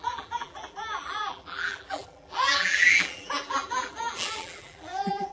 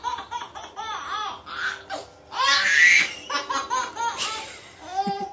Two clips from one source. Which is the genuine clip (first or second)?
second